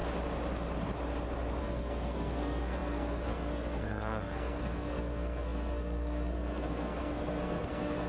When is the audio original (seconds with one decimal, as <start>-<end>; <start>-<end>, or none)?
0.0-1.6